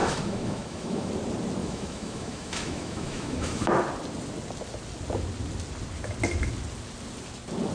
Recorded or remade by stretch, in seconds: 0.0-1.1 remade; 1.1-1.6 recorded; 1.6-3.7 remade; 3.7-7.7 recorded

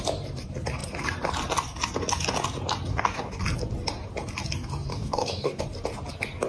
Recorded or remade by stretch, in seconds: 0.0-2.9 recorded; 2.9-3.4 remade; 3.4-4.9 recorded; 4.9-5.6 remade; 5.6-6.5 recorded

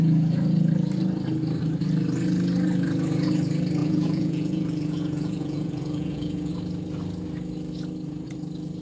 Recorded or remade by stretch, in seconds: 0.0-3.8 recorded; 3.8-6.5 remade; 6.5-8.8 recorded